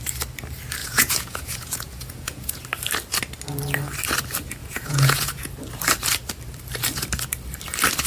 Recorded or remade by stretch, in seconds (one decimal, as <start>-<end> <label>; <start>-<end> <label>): 0.0-0.8 recorded; 0.8-2.6 remade; 2.6-4.6 recorded; 4.6-5.5 remade; 5.5-8.1 recorded